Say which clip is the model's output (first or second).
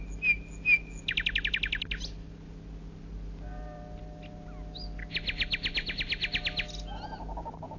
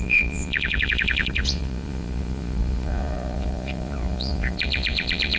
second